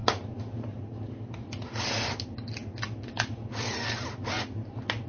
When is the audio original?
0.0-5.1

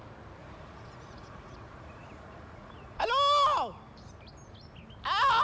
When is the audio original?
0.0-0.4; 3.1-5.4

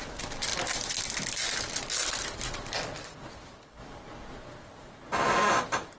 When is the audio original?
0.0-6.0

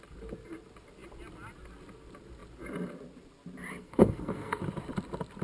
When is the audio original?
0.0-3.8; 4.6-5.4

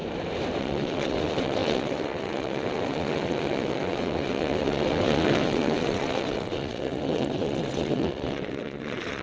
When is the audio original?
0.0-0.6

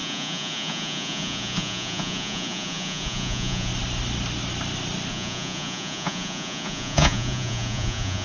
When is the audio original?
3.7-5.1

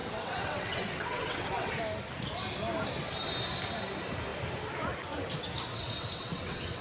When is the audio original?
1.7-5.7

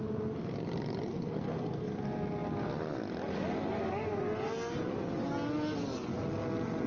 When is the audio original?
0.0-1.1; 2.0-6.9